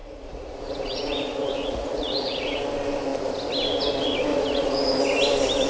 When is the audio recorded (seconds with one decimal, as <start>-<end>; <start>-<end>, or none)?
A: 2.6-4.3; 4.8-5.7